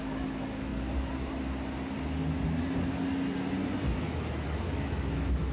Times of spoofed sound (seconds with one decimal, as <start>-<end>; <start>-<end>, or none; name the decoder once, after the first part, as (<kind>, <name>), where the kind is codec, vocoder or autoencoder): 0.0-0.7 (autoencoder, DAC-VAE); 4.0-5.5

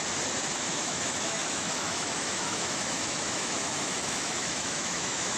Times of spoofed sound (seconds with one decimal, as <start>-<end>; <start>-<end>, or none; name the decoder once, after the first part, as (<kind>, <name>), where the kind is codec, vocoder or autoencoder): 0.6-5.4 (autoencoder, DAC-VAE)

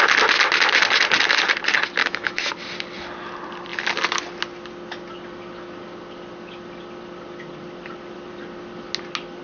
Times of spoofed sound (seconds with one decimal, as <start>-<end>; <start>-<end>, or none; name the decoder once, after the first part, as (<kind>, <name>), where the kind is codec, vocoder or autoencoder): 2.0-2.5 (autoencoder, DAC-VAE)

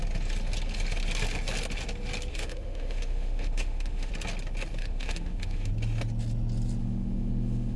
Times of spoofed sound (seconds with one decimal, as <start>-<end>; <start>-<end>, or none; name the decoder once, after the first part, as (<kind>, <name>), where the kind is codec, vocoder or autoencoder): 2.3-4.1 (autoencoder, DAC-VAE); 4.8-5.7; 6.8-7.8